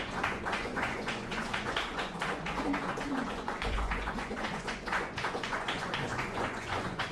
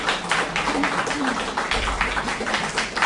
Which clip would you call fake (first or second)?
first